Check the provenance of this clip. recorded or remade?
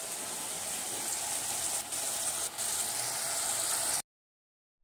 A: recorded